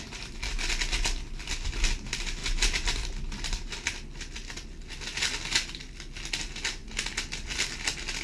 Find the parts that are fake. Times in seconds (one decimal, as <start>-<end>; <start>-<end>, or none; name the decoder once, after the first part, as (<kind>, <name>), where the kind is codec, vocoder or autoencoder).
none